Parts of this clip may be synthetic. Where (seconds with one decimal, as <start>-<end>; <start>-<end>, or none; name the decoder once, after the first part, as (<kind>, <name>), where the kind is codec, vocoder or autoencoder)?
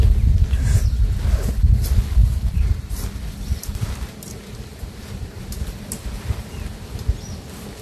2.2-2.9 (vocoder, BigVGAN v2); 4.7-6.4